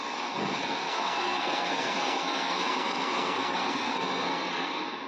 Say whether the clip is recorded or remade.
remade